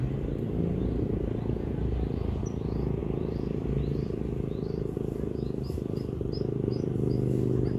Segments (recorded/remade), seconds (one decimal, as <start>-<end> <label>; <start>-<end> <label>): 0.0-7.8 recorded